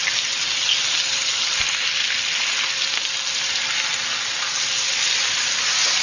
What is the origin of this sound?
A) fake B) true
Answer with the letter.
B